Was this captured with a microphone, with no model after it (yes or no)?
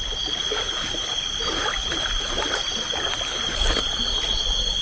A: yes